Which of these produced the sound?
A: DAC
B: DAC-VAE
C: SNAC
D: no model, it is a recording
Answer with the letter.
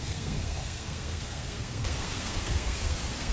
C